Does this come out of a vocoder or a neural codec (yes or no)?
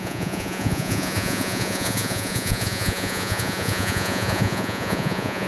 yes